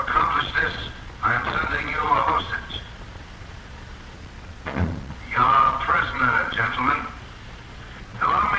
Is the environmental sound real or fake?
fake